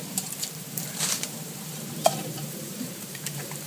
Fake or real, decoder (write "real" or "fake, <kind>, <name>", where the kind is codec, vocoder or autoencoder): fake, vocoder, BigVGAN v2